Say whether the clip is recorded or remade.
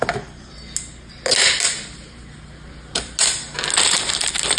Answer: recorded